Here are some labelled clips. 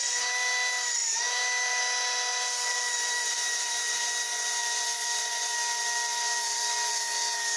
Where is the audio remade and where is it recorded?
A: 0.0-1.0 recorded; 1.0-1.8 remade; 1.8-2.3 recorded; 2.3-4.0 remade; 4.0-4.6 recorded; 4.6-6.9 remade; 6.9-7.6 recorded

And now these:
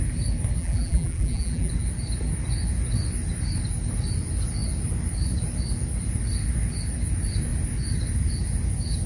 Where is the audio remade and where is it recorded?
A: 0.0-0.6 recorded; 0.6-1.7 remade; 1.7-9.1 recorded

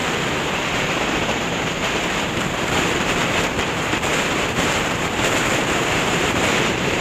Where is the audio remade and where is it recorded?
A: 0.0-0.5 recorded; 0.5-7.0 remade

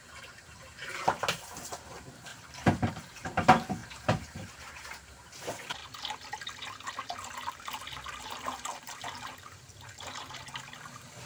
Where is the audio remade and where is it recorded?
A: 0.0-5.8 remade; 5.8-8.2 recorded; 8.2-11.3 remade